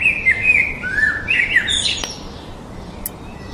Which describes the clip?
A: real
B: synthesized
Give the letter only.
A